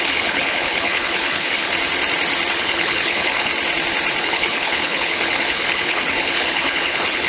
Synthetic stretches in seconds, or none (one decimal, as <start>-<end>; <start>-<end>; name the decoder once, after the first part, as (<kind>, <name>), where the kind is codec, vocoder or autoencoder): 0.0-1.7 (codec, HILCodec); 2.5-3.5; 4.2-7.3